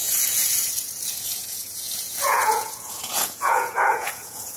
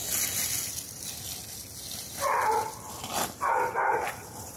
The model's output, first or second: first